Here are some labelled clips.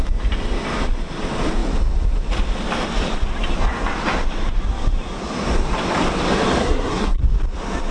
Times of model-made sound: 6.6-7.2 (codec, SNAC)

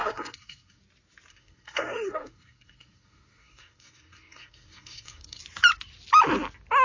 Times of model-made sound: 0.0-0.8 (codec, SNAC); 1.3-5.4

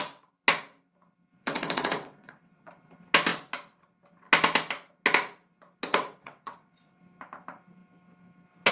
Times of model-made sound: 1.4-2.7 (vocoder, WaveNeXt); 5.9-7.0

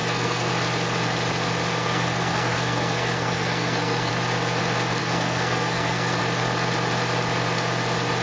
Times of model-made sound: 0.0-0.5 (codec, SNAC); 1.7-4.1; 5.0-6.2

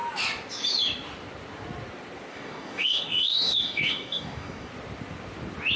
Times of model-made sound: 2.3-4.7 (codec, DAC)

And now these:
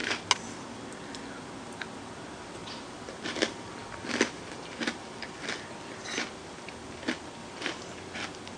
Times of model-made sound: 2.6-7.8 (vocoder, BigVGAN v2)

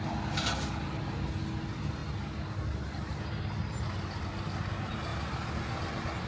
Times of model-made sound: none

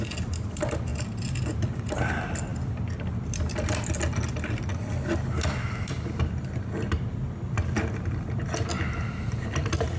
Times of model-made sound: none